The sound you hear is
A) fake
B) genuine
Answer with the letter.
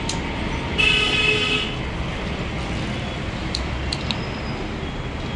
B